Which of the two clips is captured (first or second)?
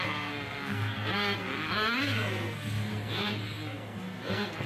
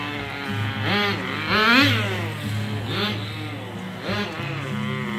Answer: second